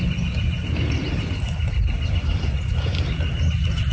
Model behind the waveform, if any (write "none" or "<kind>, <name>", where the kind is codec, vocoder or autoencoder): none